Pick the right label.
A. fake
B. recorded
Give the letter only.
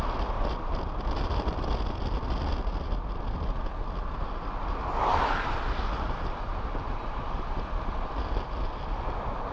B